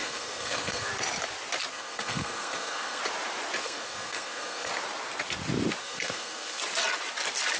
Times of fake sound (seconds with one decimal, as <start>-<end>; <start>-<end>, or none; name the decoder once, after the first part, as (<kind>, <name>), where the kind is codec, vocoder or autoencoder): 0.0-0.9 (codec, SNAC); 1.7-3.0; 3.6-4.7; 5.8-6.6

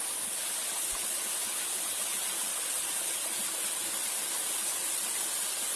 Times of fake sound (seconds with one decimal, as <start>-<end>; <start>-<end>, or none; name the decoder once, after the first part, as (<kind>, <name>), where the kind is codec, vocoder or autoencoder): none

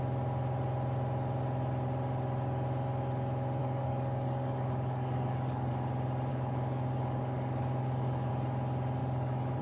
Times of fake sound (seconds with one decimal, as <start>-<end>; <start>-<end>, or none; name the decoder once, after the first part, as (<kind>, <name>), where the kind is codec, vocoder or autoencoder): 3.6-5.7 (codec, DAC); 6.3-8.3; 9.0-9.6